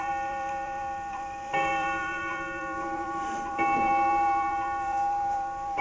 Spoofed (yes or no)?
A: yes